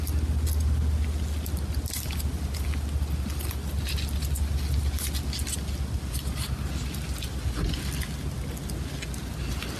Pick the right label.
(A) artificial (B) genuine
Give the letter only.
B